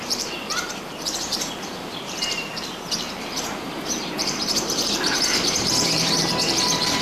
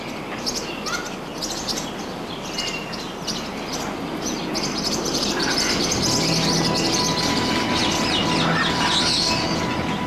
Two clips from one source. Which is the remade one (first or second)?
first